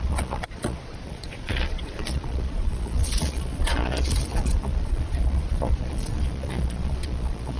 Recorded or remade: remade